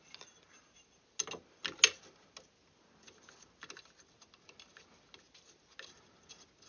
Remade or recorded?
recorded